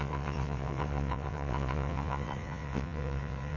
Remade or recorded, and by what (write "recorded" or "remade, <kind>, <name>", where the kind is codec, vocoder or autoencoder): remade, vocoder, WaveNeXt